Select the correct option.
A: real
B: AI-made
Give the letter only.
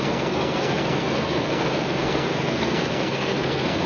B